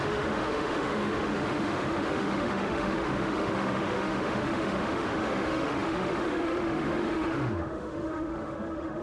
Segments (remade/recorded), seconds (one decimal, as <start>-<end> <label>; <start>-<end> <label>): 0.0-9.0 remade